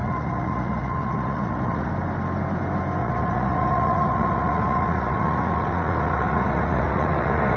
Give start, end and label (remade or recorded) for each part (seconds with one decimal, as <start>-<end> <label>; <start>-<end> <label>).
0.0-1.9 remade; 1.9-3.0 recorded; 3.0-7.6 remade